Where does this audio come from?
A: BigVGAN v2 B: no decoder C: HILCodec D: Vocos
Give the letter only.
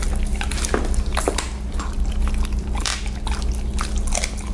B